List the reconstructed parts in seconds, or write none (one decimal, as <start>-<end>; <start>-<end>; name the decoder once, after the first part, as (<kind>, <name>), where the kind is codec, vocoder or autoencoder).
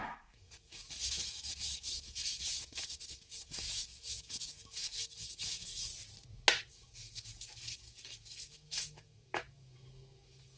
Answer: 0.0-5.9 (autoencoder, DAC-VAE); 6.7-10.6